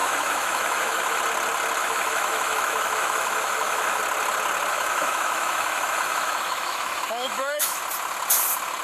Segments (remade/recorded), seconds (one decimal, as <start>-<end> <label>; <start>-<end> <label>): 0.0-1.2 remade; 1.2-1.8 recorded; 1.8-4.0 remade; 4.0-4.7 recorded; 4.7-7.8 remade; 7.8-8.8 recorded